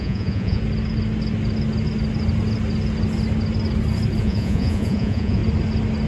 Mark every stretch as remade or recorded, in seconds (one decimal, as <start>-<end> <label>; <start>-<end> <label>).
0.0-0.6 remade; 0.6-4.2 recorded; 4.2-5.4 remade; 5.4-6.1 recorded